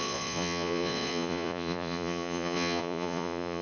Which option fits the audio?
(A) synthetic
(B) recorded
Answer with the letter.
A